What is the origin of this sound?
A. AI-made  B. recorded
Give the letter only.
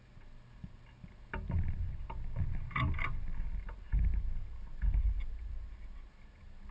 B